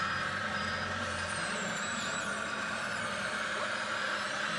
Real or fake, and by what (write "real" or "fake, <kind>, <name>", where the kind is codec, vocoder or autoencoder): fake, vocoder, BigVGAN v2